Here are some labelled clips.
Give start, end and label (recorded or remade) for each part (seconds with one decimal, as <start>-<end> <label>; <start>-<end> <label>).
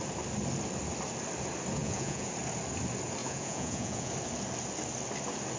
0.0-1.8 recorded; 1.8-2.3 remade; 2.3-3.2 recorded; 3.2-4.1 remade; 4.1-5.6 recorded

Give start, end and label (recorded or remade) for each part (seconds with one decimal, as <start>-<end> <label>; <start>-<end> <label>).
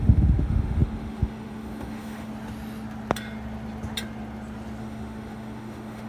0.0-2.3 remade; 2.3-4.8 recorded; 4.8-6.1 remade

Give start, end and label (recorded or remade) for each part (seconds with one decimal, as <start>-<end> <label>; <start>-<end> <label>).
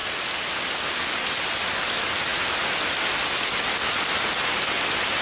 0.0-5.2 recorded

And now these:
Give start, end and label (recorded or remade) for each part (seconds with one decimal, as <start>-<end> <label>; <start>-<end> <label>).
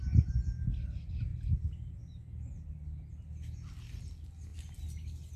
0.0-5.4 recorded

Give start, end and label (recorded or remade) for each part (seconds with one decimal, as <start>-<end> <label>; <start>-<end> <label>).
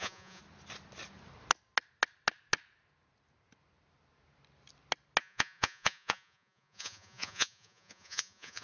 0.0-0.4 remade; 0.4-5.2 recorded; 5.2-8.6 remade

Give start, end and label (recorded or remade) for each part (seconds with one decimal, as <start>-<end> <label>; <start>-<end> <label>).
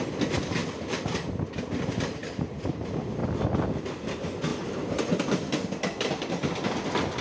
0.0-0.6 recorded; 0.6-1.6 remade; 1.6-4.5 recorded; 4.5-5.6 remade; 5.6-7.2 recorded